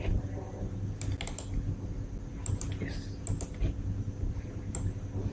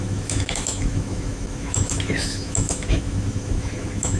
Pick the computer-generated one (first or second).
second